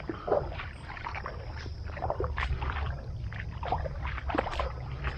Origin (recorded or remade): remade